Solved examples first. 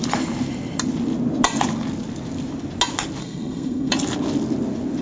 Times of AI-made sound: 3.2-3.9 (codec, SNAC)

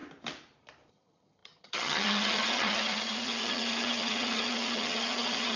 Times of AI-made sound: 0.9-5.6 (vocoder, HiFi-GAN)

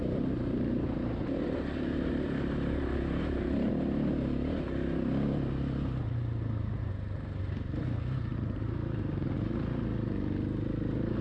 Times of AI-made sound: 1.1-3.7 (vocoder, BigVGAN v2); 8.3-9.1